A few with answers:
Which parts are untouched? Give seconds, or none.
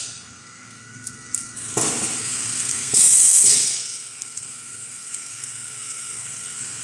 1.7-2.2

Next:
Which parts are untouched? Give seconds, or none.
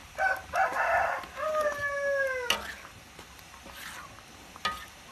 0.0-5.1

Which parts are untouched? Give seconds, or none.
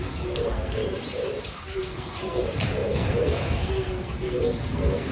0.8-1.4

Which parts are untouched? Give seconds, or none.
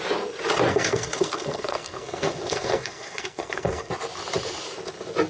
0.0-0.7; 3.9-5.3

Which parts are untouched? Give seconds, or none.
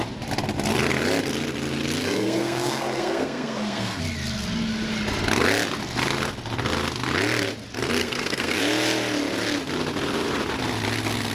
0.0-2.0; 4.0-8.0; 8.6-11.3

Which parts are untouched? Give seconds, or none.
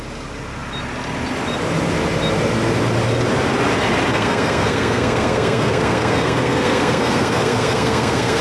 0.0-4.1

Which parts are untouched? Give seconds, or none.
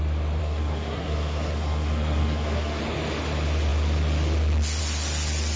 0.0-0.4; 2.8-5.6